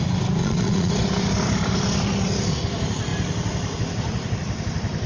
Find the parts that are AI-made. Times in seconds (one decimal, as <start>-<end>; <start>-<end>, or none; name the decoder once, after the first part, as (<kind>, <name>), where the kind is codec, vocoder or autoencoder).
0.4-0.9 (vocoder, Vocos)